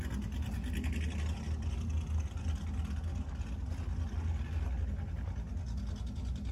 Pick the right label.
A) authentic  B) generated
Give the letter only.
A